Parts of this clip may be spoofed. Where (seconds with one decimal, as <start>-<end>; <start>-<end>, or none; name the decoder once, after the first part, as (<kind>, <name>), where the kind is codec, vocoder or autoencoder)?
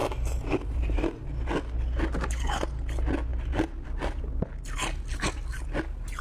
0.0-1.3 (vocoder, BigVGAN v2)